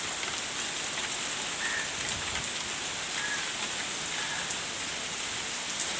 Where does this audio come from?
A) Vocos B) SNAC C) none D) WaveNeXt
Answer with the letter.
C